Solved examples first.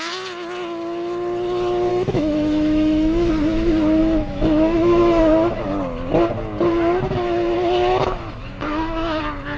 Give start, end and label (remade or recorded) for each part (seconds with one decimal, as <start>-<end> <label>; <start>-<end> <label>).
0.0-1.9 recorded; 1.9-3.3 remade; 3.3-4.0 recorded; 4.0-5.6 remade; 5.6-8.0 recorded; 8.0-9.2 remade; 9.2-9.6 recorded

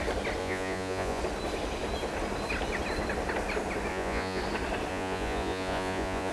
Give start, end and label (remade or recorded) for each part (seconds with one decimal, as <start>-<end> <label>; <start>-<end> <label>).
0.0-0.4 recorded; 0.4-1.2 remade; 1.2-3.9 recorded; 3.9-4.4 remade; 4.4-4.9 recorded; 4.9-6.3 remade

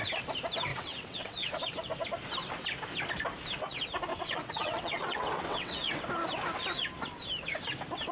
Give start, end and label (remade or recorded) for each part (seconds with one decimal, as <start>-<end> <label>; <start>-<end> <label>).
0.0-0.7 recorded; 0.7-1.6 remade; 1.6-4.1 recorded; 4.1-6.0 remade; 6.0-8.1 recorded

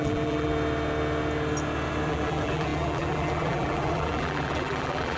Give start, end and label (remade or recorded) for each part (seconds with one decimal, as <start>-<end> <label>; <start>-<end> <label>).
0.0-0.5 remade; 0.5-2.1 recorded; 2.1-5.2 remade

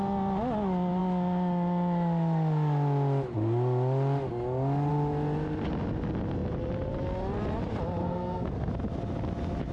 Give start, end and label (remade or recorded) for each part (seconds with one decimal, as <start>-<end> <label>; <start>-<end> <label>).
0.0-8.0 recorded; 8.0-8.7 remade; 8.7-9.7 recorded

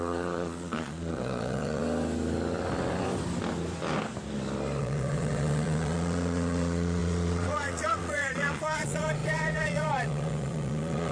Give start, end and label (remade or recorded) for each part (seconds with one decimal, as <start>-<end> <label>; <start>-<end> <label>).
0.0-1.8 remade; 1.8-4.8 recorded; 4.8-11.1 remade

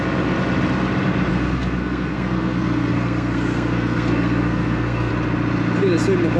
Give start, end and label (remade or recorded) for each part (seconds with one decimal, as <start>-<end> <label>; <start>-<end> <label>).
0.0-1.3 recorded; 1.3-5.1 remade; 5.1-6.4 recorded

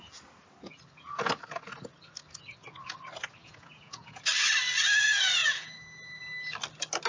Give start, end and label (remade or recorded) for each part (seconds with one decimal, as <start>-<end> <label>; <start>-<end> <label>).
0.0-3.4 recorded; 3.4-4.2 remade; 4.2-5.4 recorded; 5.4-6.2 remade; 6.2-7.1 recorded